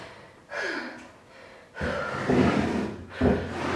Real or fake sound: real